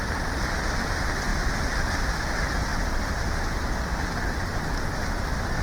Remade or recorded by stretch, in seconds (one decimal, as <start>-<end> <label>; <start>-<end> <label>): 0.0-5.6 recorded